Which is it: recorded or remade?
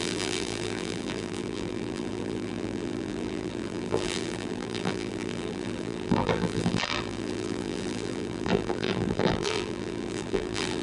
remade